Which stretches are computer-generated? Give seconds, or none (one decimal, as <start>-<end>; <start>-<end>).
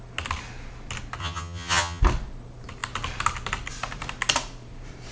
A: 1.2-2.0